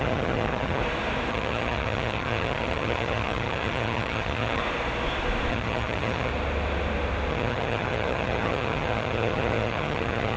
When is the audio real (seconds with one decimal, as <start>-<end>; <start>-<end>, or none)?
0.8-1.3; 4.6-5.5; 6.3-7.3